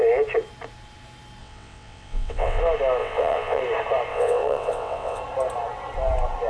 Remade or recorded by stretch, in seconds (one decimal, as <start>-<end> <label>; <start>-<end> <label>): 0.0-1.4 recorded; 1.4-2.6 remade; 2.6-3.0 recorded; 3.0-3.6 remade; 3.6-4.1 recorded; 4.1-5.2 remade; 5.2-6.5 recorded